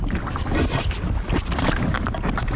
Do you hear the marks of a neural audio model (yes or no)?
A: no